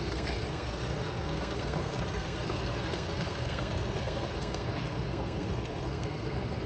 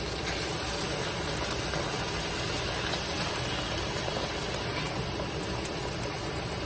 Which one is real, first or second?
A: second